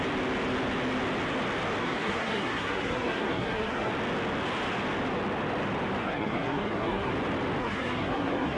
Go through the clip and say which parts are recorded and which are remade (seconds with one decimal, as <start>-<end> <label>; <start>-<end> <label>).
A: 0.0-1.8 recorded; 1.8-3.9 remade; 3.9-6.0 recorded; 6.0-7.1 remade; 7.1-7.6 recorded; 7.6-8.6 remade